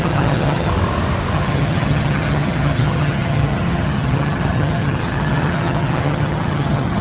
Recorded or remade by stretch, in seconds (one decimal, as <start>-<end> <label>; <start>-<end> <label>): 0.0-0.7 remade; 0.7-1.3 recorded; 1.3-7.0 remade